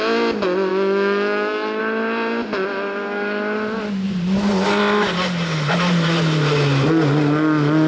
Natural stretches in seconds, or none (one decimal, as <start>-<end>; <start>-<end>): 0.0-0.7; 1.8-7.9